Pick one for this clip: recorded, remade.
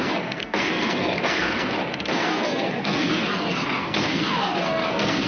remade